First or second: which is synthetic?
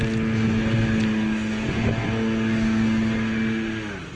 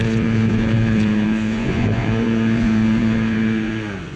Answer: second